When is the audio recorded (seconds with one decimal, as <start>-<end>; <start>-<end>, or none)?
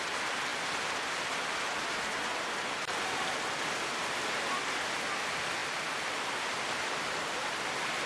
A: 0.0-8.1